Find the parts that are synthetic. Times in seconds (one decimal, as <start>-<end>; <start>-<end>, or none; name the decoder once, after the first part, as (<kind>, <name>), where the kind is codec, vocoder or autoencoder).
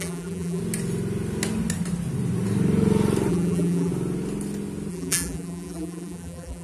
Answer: 0.0-0.6 (vocoder, BigVGAN v2); 3.3-3.9; 4.9-6.6